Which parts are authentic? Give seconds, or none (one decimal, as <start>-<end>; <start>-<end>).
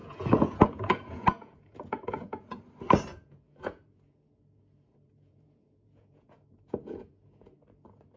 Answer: 2.6-3.1; 7.6-8.2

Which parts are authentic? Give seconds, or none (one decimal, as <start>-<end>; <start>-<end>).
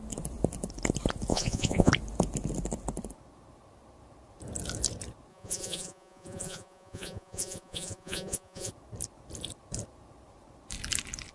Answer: 0.0-1.3; 1.9-5.3; 8.7-11.3